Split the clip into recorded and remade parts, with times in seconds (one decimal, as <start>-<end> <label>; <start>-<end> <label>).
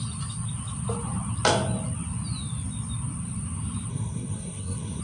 0.0-3.9 recorded; 3.9-5.0 remade